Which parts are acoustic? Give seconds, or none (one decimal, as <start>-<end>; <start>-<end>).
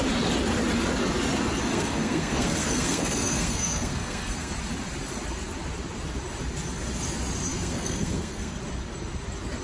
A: 0.0-1.7; 4.5-7.5; 8.6-9.6